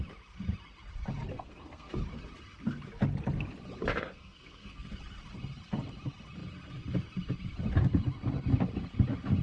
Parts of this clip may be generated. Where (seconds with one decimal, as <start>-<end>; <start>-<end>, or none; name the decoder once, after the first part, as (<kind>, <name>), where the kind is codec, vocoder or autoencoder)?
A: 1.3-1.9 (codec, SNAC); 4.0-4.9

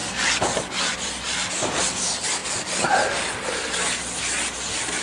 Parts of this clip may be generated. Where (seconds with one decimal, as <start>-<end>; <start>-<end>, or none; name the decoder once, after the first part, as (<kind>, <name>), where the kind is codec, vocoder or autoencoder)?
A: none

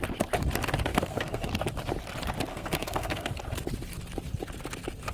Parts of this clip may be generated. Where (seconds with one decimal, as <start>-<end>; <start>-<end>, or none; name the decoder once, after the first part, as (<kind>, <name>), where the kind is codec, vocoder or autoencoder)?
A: 0.9-1.5 (codec, SNAC); 2.5-3.3